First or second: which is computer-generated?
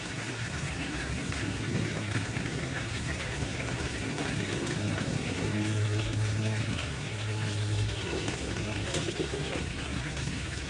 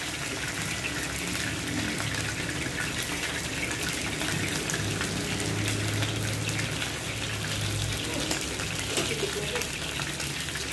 first